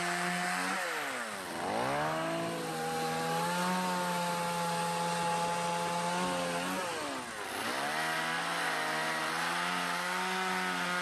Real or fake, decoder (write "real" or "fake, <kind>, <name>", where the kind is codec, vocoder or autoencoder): real